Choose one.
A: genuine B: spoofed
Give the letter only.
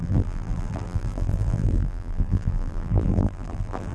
B